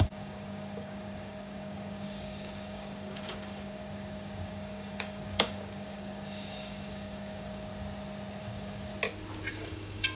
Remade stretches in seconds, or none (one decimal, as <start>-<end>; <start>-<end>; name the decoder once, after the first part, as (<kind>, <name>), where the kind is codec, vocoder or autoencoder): 0.0-7.7 (codec, DAC); 8.4-8.9; 9.5-10.1